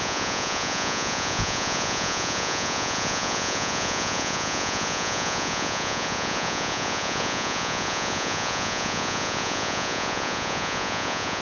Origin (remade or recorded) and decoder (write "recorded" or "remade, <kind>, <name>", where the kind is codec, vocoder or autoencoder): remade, vocoder, Vocos